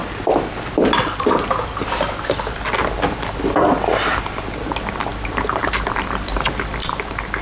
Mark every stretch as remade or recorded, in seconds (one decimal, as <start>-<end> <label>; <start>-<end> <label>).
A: 0.0-7.4 recorded